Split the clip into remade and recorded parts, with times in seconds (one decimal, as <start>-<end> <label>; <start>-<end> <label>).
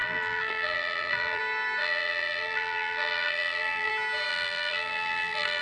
0.0-1.4 remade; 1.4-1.8 recorded; 1.8-3.9 remade; 3.9-4.3 recorded; 4.3-5.6 remade